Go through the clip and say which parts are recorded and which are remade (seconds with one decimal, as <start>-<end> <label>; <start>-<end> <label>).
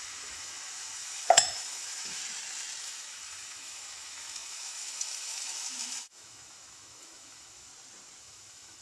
0.0-2.2 remade; 2.2-2.8 recorded; 2.8-7.7 remade; 7.7-8.2 recorded; 8.2-8.8 remade